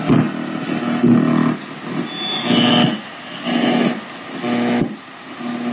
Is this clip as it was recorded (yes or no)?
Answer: yes